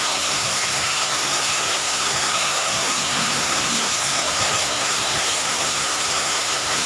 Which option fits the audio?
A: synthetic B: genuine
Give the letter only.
A